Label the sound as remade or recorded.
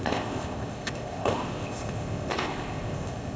remade